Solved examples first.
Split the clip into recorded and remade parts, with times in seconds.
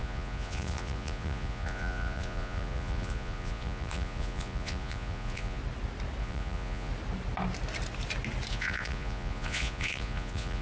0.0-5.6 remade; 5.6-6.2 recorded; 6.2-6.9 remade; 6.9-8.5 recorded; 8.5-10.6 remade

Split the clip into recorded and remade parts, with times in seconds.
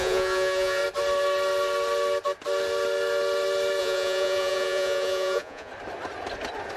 0.0-0.8 remade; 0.8-3.8 recorded; 3.8-5.7 remade; 5.7-6.8 recorded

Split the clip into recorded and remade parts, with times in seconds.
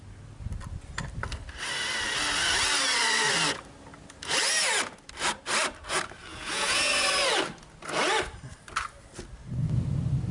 0.0-6.3 recorded; 6.3-6.9 remade; 6.9-10.3 recorded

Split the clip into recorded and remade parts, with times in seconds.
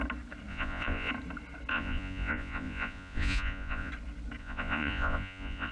0.0-0.5 recorded; 0.5-1.1 remade; 1.1-1.7 recorded; 1.7-3.9 remade; 3.9-4.4 recorded; 4.4-5.7 remade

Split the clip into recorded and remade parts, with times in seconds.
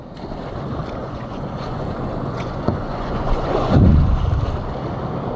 0.0-1.0 recorded; 1.0-4.2 remade; 4.2-5.4 recorded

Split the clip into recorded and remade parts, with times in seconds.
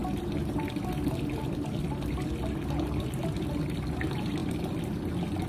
0.0-5.5 recorded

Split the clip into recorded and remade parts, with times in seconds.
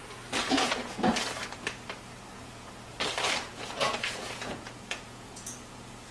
0.0-0.4 recorded; 0.4-1.1 remade; 1.1-2.3 recorded; 2.3-2.9 remade; 2.9-3.5 recorded; 3.5-6.1 remade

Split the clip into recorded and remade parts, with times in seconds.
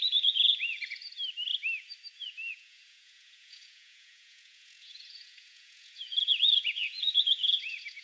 0.0-1.0 remade; 1.0-2.2 recorded; 2.2-8.0 remade